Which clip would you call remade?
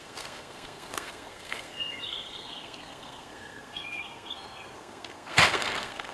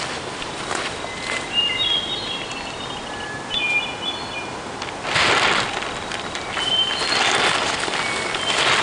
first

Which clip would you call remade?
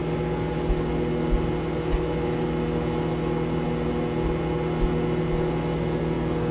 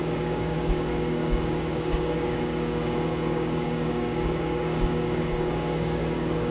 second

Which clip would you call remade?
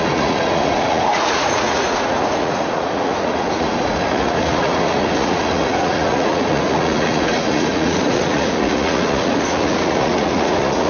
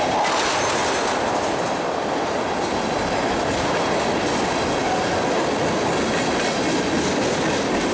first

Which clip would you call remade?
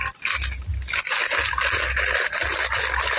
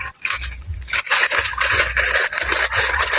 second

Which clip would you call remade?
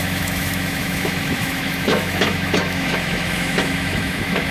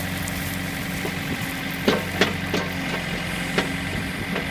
first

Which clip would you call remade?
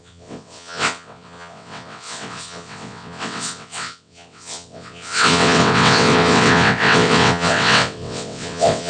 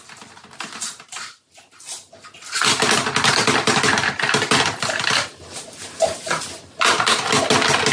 first